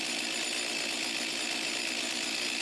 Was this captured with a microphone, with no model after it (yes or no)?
yes